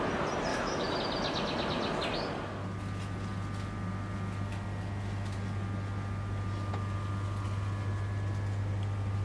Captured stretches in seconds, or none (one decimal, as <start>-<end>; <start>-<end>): 0.0-0.5; 1.0-9.2